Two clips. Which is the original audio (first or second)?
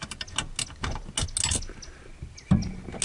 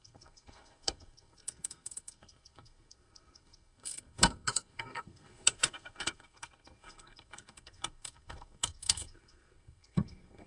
first